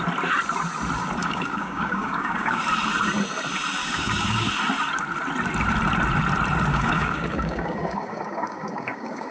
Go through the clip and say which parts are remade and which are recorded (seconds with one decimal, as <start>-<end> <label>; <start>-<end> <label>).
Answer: 0.0-1.2 recorded; 1.2-2.6 remade; 2.6-3.8 recorded; 3.8-4.5 remade; 4.5-6.7 recorded; 6.7-9.3 remade